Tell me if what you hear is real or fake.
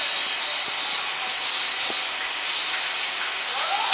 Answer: real